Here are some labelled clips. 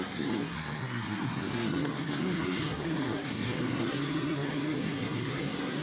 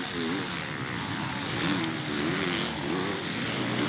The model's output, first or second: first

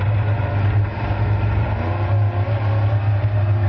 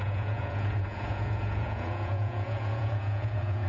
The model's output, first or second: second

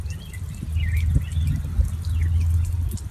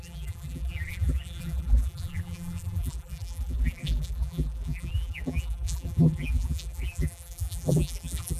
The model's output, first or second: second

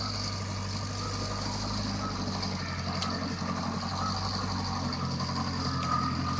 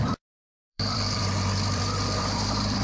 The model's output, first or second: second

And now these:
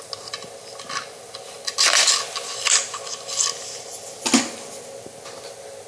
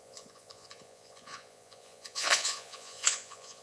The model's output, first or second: second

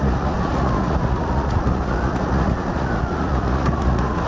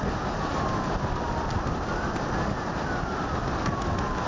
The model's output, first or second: first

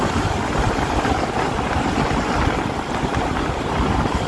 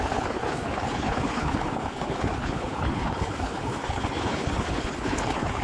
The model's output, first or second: second